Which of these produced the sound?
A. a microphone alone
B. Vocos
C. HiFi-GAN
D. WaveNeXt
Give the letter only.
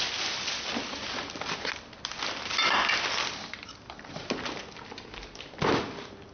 A